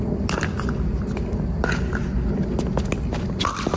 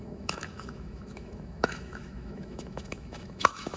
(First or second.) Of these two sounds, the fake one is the second